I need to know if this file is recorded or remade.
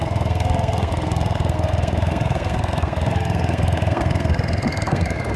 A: remade